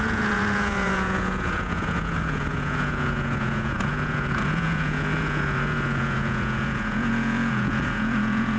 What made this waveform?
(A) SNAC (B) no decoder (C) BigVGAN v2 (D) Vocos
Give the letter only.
D